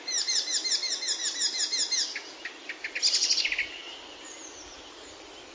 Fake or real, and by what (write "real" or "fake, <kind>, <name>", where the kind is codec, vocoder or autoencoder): real